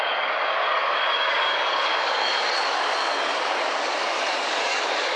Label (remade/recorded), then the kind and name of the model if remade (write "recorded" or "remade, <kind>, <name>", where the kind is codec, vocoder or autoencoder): remade, codec, DAC